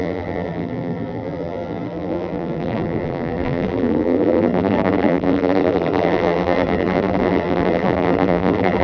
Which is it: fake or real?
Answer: fake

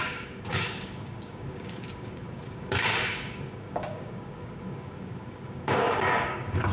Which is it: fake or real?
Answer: fake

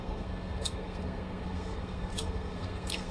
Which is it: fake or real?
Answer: fake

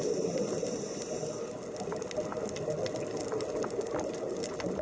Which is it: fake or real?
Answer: real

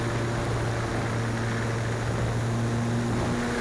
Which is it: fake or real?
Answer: real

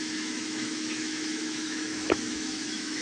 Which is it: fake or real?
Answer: fake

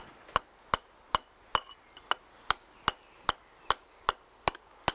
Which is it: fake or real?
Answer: real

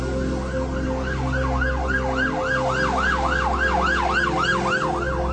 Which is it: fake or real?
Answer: real